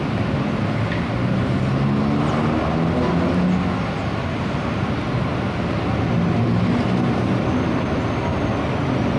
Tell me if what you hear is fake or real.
real